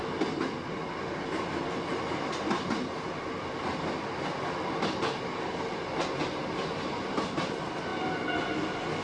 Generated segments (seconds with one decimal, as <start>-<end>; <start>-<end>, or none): 6.2-7.0